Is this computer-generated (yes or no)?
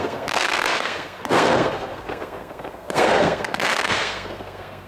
yes